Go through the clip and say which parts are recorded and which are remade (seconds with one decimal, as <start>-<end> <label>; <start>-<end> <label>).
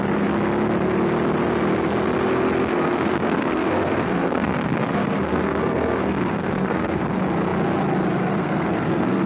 0.0-2.7 recorded; 2.7-7.0 remade; 7.0-8.4 recorded; 8.4-9.3 remade